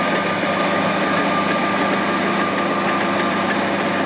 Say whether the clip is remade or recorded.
recorded